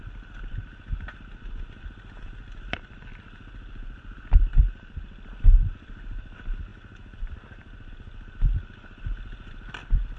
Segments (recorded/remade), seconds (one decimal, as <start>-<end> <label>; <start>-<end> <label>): 0.0-10.2 recorded